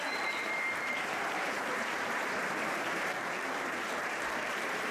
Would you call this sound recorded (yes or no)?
no